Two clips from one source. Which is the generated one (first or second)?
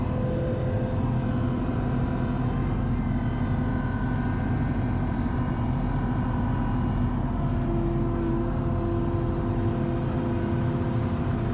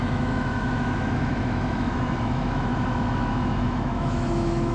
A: second